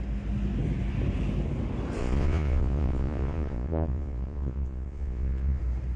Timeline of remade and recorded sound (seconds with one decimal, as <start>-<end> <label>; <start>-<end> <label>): 0.0-2.0 recorded; 2.0-5.6 remade; 5.6-6.0 recorded